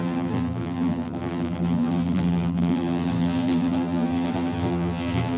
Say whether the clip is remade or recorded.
remade